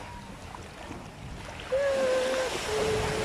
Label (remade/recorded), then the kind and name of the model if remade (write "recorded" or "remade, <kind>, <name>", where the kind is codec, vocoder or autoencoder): recorded